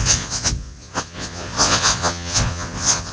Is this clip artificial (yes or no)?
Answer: yes